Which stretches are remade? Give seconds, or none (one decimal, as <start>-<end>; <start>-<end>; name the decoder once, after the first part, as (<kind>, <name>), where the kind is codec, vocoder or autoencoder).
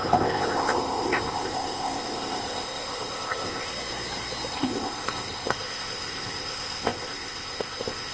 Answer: 0.0-3.7 (codec, ZipCodec); 4.5-8.1